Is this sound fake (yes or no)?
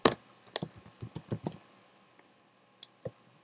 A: no